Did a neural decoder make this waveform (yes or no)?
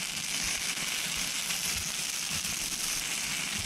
no